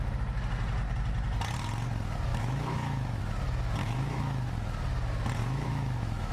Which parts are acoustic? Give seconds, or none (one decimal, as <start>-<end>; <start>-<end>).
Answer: 0.0-2.3; 3.2-3.8; 4.5-5.4